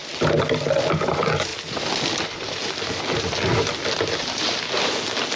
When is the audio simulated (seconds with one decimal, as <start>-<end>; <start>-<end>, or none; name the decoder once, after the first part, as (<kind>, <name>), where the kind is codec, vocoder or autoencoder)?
none